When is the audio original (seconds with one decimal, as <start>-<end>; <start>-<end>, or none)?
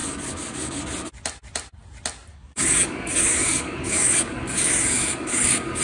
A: 0.8-2.3